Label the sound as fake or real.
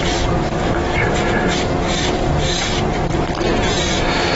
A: real